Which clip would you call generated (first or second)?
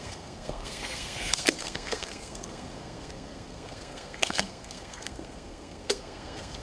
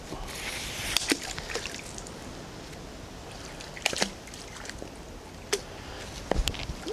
first